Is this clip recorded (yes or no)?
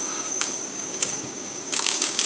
no